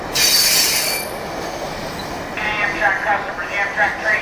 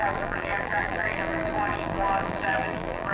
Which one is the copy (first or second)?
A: second